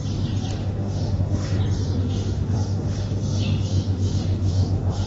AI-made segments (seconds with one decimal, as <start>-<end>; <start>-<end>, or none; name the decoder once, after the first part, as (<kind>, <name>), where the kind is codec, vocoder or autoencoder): 0.6-1.6 (autoencoder, DAC-VAE); 2.0-5.1